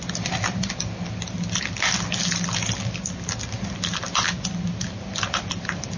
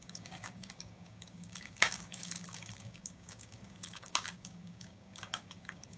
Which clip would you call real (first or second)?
first